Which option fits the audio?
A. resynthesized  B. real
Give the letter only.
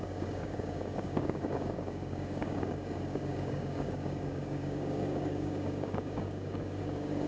A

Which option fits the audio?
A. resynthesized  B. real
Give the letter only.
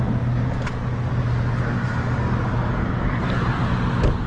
B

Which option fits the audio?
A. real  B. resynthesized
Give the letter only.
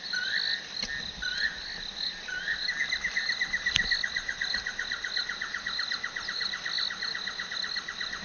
A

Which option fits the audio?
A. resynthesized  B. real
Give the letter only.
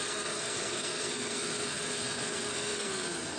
A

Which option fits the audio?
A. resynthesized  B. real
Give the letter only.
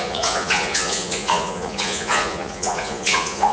A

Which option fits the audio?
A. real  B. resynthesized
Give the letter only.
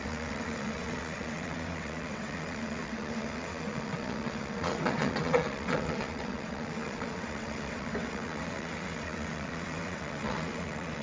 B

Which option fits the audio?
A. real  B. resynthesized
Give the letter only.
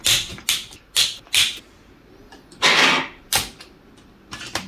A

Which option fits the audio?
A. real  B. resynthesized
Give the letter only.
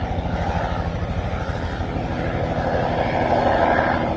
A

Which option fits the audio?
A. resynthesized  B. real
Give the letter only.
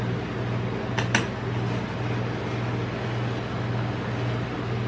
B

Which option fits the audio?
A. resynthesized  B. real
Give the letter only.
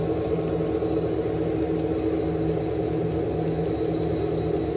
B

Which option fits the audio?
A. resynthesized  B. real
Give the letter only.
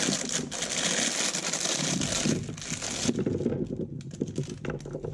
B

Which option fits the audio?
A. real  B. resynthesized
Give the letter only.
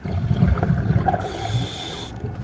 A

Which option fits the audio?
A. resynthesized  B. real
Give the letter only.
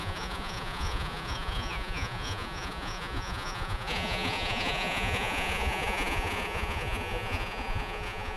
A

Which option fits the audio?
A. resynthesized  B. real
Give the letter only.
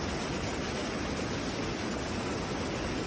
B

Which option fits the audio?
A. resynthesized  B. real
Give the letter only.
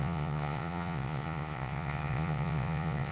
A